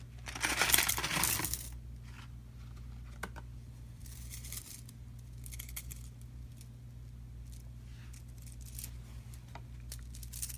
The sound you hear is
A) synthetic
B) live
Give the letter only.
B